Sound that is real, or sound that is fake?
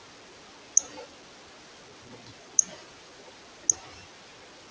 real